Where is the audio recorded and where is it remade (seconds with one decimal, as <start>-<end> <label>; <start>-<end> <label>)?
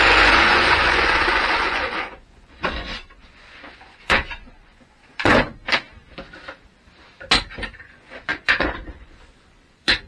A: 0.0-5.6 remade; 5.6-7.8 recorded; 7.8-10.1 remade